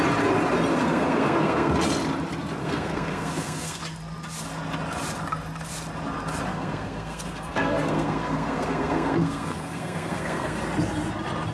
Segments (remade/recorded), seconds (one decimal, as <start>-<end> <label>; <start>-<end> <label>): 0.0-0.7 recorded; 0.7-1.7 remade; 1.7-2.6 recorded; 2.6-3.8 remade; 3.8-6.5 recorded; 6.5-10.6 remade; 10.6-11.5 recorded